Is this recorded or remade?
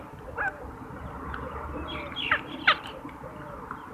recorded